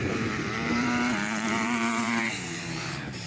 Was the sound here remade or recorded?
remade